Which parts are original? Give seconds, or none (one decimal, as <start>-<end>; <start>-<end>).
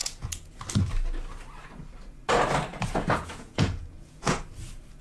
0.6-2.7; 4.4-5.0